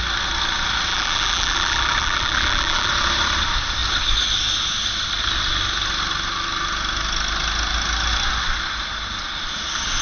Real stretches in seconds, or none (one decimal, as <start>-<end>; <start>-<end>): 0.0-0.9; 2.9-10.0